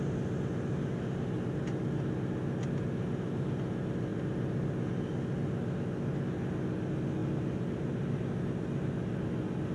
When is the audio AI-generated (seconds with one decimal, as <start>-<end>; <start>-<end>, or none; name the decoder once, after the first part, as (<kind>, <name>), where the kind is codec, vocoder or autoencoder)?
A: none

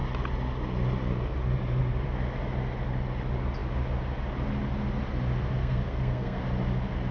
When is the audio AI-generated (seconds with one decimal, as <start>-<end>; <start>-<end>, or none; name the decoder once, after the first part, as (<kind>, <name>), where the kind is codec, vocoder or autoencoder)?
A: 5.6-6.4 (codec, SNAC)

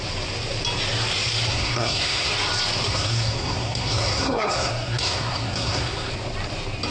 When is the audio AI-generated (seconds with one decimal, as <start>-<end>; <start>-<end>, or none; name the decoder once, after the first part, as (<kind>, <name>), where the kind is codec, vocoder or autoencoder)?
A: 1.5-2.3 (codec, SNAC); 2.9-6.1

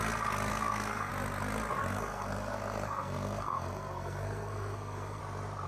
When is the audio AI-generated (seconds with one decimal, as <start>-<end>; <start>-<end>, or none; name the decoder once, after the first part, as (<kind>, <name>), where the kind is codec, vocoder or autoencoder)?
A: 0.5-1.1 (codec, SNAC); 1.8-5.2

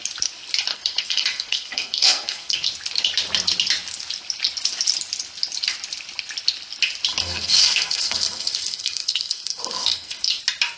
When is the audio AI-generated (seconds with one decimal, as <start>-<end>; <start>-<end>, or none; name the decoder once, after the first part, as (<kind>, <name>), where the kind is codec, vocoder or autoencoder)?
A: 0.7-2.7 (codec, SNAC); 7.1-10.4

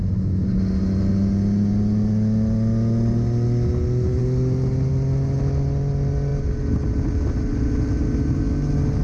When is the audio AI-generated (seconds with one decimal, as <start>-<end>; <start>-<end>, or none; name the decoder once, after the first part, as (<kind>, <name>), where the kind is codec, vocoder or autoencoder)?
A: none

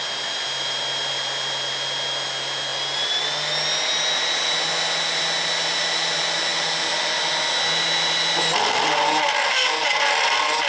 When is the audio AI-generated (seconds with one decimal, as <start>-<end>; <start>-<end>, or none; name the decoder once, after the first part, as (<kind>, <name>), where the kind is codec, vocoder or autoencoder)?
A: none